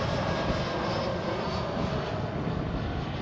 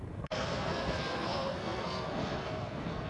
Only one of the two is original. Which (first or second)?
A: first